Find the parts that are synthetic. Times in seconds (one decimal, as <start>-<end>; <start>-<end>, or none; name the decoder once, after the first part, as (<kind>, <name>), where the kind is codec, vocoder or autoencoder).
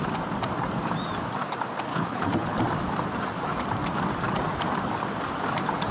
1.9-2.6 (codec, HILCodec)